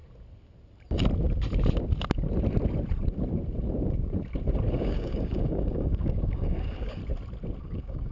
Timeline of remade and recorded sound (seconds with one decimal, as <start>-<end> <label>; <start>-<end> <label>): 0.0-4.7 recorded; 4.7-7.0 remade; 7.0-7.6 recorded; 7.6-8.1 remade